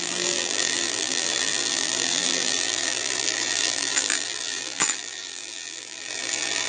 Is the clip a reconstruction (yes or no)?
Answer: yes